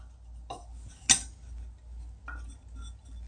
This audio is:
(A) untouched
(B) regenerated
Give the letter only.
A